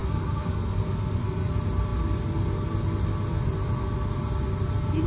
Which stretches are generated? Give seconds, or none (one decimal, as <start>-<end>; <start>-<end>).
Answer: 0.0-1.5